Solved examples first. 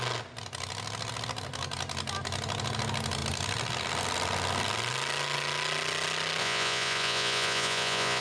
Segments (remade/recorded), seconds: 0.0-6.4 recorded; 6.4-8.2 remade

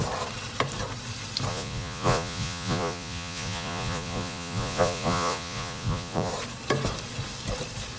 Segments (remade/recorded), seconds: 0.0-1.5 recorded; 1.5-6.3 remade; 6.3-8.0 recorded

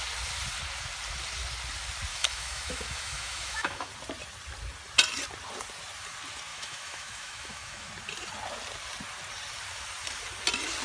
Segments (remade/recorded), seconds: 0.0-2.1 recorded; 2.1-3.9 remade; 3.9-6.5 recorded; 6.5-7.9 remade; 7.9-10.8 recorded

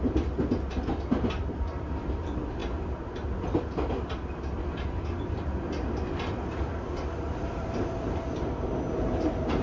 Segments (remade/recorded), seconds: 0.0-9.6 recorded

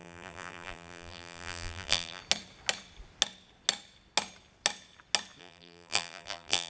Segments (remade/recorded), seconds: 0.0-2.2 remade; 2.2-5.4 recorded; 5.4-6.7 remade

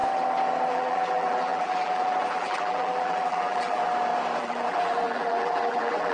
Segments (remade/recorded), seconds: 0.0-0.7 recorded; 0.7-3.8 remade; 3.8-4.4 recorded; 4.4-6.1 remade

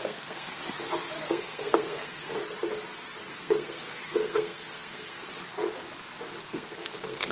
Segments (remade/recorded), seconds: 0.0-0.6 remade; 0.6-1.2 recorded; 1.2-2.4 remade; 2.4-3.3 recorded; 3.3-5.3 remade; 5.3-6.4 recorded; 6.4-7.3 remade

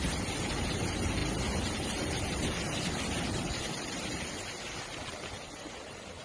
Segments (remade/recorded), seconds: 0.0-6.2 recorded